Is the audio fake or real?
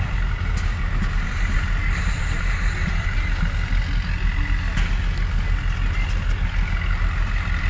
real